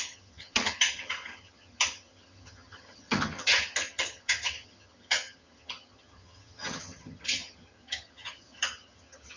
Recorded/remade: remade